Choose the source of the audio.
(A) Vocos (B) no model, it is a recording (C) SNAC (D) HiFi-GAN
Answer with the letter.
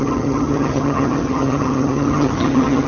D